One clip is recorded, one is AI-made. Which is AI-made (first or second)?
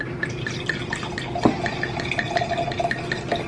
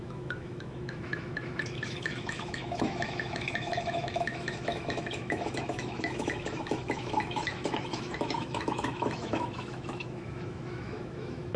second